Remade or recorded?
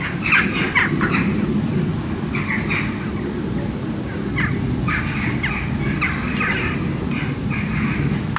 recorded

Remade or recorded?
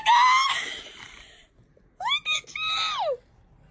recorded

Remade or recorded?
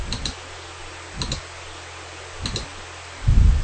recorded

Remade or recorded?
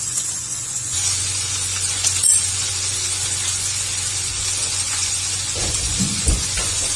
remade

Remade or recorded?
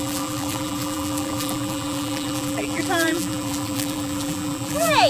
remade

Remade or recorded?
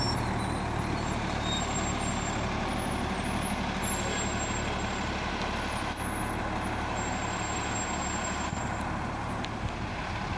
recorded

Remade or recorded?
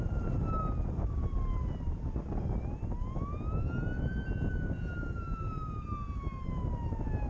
recorded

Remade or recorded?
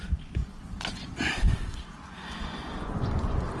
remade